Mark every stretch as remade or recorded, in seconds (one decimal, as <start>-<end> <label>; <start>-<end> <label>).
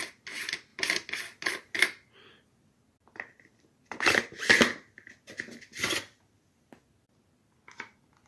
0.0-8.3 recorded